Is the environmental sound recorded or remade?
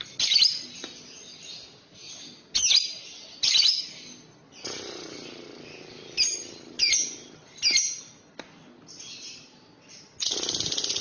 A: recorded